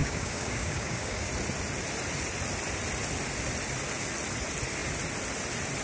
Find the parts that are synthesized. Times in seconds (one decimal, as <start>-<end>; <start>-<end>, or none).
0.0-1.3